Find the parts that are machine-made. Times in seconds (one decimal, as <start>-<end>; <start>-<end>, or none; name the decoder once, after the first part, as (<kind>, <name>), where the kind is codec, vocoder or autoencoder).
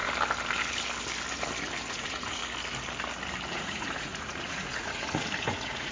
1.9-2.4 (vocoder, Vocos); 3.5-5.9